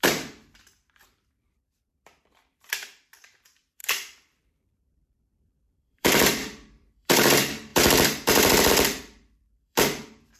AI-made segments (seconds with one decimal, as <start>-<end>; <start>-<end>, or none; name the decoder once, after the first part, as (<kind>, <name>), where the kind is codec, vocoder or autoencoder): 0.0-10.4 (vocoder, BigVGAN v2)